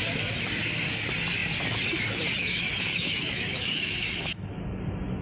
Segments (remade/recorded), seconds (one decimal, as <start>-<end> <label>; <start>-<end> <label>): 0.0-2.4 recorded; 2.4-4.4 remade; 4.4-5.2 recorded